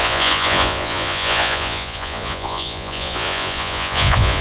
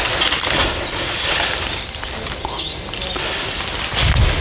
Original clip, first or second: second